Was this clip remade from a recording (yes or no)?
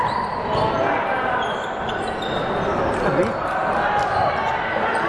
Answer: no